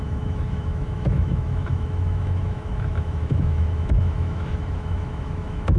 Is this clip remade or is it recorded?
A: remade